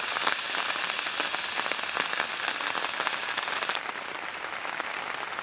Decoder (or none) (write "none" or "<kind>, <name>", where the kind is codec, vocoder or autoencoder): none